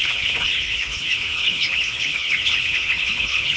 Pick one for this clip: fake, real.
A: fake